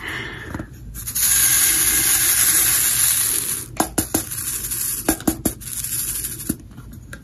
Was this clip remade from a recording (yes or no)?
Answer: no